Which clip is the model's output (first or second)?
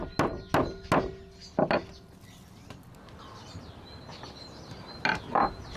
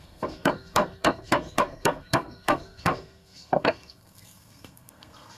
second